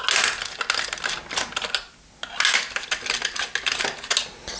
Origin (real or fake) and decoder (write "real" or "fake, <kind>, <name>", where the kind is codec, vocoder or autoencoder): real